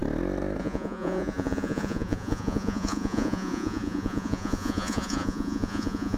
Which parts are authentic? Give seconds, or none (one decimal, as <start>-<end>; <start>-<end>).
0.0-0.6